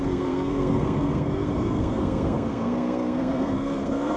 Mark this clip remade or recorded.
remade